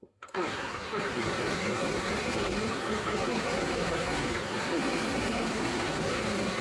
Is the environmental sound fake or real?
fake